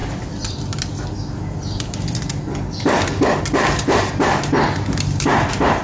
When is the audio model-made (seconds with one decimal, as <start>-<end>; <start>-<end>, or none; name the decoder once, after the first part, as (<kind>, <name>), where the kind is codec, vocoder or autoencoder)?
2.5-3.4 (codec, DAC)